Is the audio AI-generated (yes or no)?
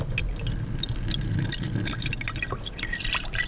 no